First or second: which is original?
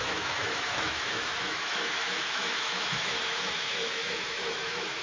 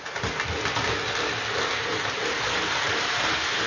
second